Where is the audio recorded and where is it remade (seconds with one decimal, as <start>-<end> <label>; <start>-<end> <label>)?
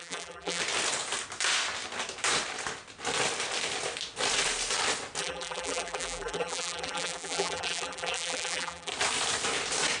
0.0-0.6 remade; 0.6-5.2 recorded; 5.2-8.9 remade; 8.9-10.0 recorded